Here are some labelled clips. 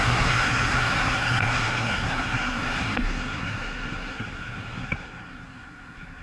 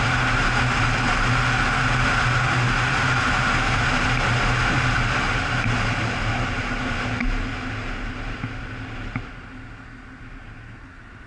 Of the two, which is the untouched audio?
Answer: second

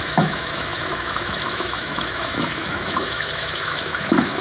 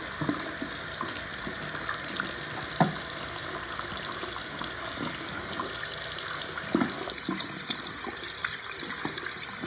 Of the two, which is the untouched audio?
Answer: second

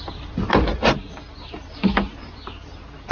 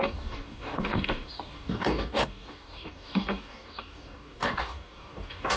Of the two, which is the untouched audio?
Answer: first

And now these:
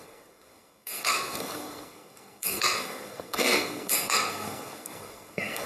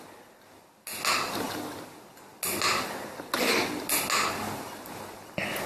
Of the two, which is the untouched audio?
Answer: second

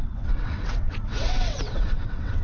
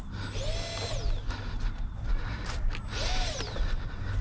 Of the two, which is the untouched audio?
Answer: second